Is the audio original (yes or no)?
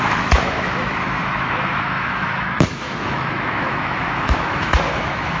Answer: no